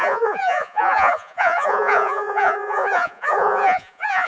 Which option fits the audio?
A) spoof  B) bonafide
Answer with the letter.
A